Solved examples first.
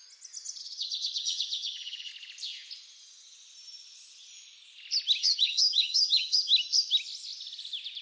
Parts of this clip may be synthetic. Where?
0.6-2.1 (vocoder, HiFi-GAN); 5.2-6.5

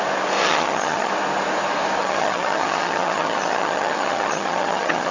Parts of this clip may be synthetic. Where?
0.4-1.1 (vocoder, HiFi-GAN); 2.0-5.1

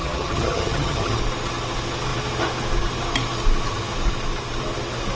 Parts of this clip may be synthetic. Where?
0.0-1.2 (vocoder, HiFi-GAN)

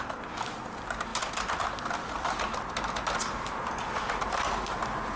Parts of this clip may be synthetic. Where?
none

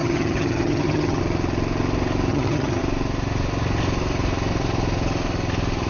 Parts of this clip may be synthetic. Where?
0.0-1.2 (vocoder, HiFi-GAN); 2.3-2.8